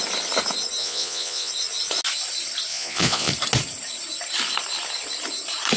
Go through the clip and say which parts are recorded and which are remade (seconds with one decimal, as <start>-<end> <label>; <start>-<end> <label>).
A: 0.0-0.8 recorded; 0.8-1.5 remade; 1.5-2.7 recorded; 2.7-3.3 remade; 3.3-5.8 recorded